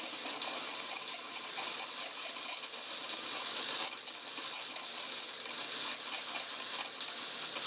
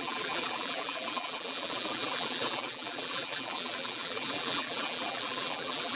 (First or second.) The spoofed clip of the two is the second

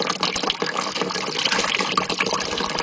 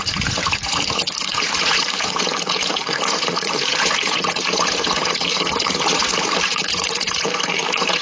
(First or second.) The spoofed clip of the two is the second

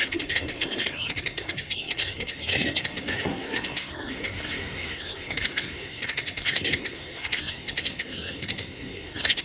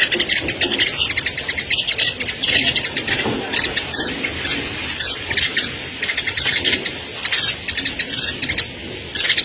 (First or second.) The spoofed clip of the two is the first